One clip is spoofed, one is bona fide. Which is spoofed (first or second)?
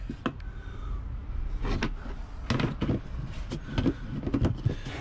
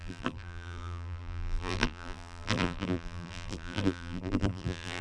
second